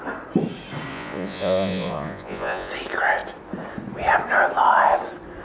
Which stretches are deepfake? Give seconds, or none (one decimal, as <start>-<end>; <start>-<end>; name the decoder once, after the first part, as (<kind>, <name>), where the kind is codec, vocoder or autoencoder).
0.9-2.7 (vocoder, Vocos)